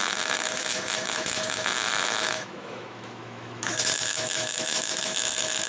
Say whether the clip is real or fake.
fake